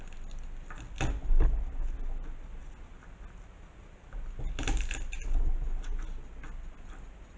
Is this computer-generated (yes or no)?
no